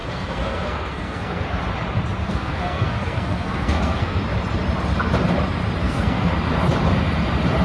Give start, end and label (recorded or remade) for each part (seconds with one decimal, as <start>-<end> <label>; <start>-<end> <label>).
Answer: 0.0-1.6 remade; 1.6-2.2 recorded; 2.2-4.2 remade; 4.2-5.8 recorded; 5.8-6.3 remade; 6.3-7.6 recorded